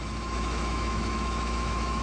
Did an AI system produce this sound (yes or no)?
yes